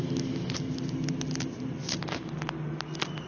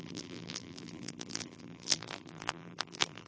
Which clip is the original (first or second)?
first